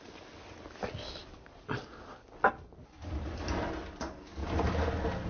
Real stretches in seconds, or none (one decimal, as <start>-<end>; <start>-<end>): 0.0-5.3